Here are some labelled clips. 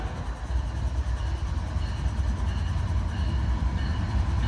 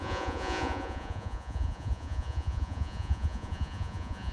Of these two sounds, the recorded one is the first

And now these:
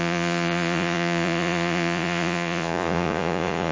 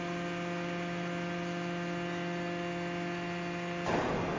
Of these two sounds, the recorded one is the second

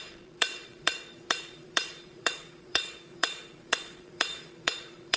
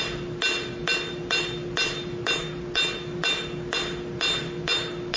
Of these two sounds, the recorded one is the second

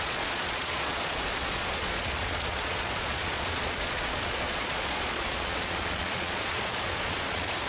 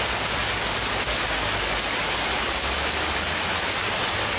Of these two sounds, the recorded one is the second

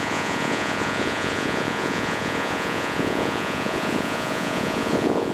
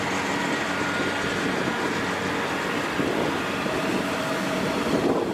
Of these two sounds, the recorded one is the second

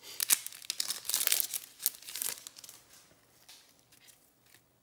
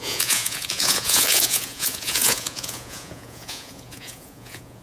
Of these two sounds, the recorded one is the first